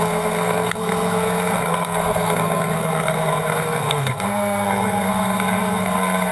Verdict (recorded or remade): remade